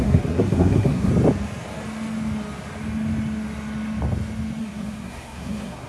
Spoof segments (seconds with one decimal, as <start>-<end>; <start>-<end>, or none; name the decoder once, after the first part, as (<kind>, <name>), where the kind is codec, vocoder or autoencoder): 0.0-1.1 (codec, SNAC); 4.6-5.9